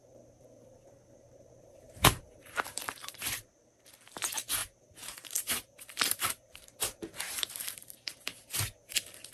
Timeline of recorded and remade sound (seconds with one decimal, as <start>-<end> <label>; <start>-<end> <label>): 0.0-3.7 remade; 3.7-4.6 recorded; 4.6-6.8 remade; 6.8-7.8 recorded; 7.8-8.5 remade; 8.5-9.3 recorded